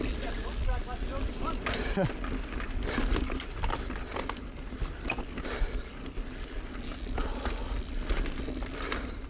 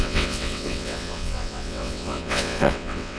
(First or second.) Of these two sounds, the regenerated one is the second